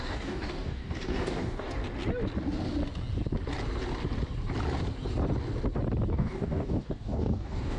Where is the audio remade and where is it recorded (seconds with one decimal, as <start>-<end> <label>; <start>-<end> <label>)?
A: 0.0-1.8 remade; 1.8-6.1 recorded; 6.1-7.8 remade